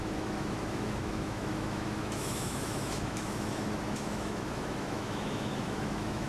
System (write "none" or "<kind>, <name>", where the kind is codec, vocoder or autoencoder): autoencoder, DAC-VAE